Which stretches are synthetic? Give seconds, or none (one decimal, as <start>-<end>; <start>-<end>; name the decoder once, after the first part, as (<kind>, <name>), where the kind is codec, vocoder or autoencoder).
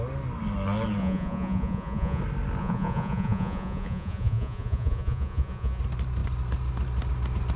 1.0-2.2 (vocoder, Vocos); 2.6-5.8